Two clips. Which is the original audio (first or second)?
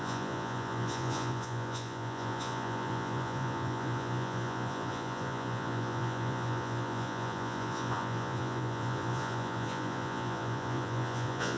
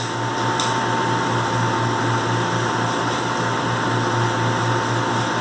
second